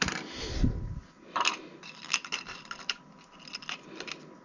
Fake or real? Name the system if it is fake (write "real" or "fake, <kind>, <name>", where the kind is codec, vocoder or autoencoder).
real